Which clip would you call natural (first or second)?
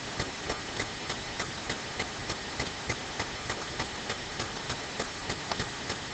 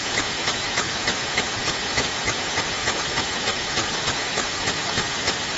first